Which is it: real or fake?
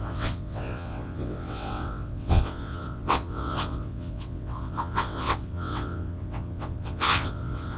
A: fake